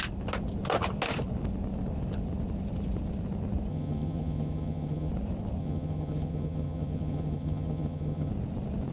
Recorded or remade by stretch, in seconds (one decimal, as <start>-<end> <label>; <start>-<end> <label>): 0.0-3.7 recorded; 3.7-5.1 remade; 5.1-5.6 recorded; 5.6-8.3 remade; 8.3-8.9 recorded